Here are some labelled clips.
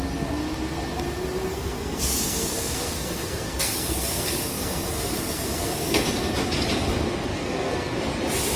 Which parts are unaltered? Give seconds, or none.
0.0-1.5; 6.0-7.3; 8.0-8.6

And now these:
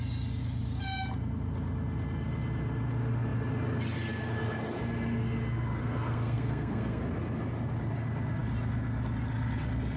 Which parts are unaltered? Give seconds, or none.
0.0-5.8; 7.0-10.0